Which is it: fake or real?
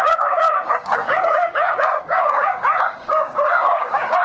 fake